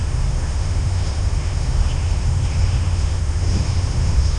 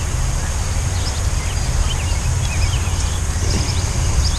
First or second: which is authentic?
second